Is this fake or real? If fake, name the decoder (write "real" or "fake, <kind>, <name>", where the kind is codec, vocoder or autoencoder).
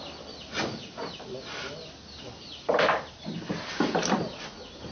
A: real